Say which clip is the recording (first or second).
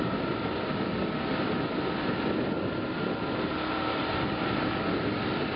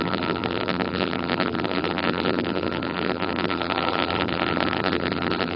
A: first